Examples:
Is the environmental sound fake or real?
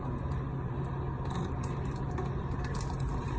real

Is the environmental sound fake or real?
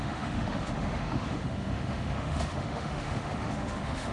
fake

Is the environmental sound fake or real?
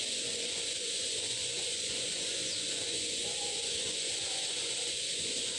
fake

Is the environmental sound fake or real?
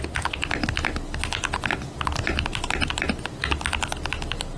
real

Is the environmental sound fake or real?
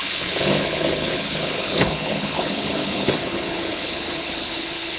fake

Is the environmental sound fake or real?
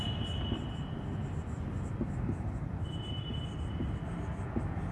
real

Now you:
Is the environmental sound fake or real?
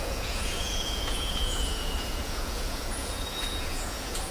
fake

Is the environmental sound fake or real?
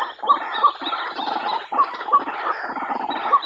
real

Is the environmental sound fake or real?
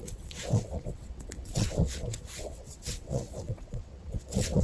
fake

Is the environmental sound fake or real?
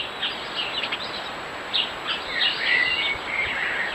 real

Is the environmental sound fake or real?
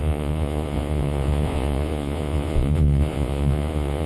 fake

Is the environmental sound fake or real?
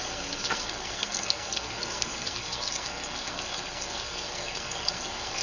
fake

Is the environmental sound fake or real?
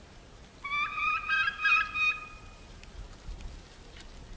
real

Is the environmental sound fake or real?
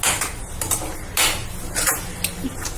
real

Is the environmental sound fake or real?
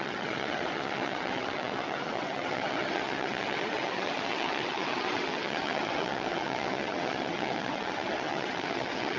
fake